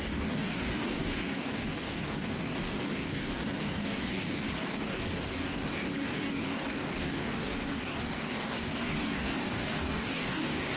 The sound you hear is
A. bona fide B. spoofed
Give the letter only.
B